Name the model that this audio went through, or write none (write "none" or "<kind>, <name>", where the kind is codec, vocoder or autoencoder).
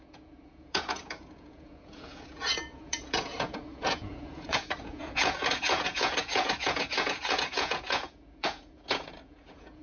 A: vocoder, Vocos